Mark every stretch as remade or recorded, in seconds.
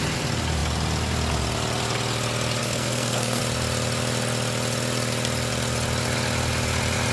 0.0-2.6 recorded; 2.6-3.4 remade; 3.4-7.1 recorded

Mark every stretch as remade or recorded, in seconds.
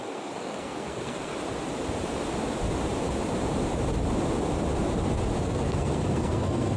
0.0-1.3 remade; 1.3-5.4 recorded; 5.4-6.8 remade